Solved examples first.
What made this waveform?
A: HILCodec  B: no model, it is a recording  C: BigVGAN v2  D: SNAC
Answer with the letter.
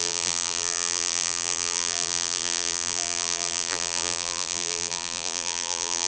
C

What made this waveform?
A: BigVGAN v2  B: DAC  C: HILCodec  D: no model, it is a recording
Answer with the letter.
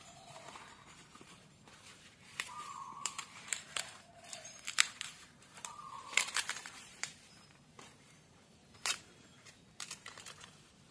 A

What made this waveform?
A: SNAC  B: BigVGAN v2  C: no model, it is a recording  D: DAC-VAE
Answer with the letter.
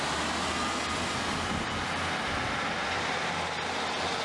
C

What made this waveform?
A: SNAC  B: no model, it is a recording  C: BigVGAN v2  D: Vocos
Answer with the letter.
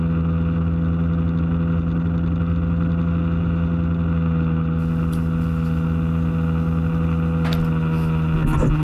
B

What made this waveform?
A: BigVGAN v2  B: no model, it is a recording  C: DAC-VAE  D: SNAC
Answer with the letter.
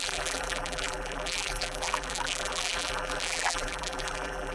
A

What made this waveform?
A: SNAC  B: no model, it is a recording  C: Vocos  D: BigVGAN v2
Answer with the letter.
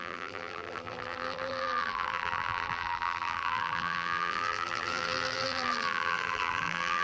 D